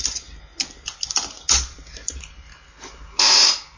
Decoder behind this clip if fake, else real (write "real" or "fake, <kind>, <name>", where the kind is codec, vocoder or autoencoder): real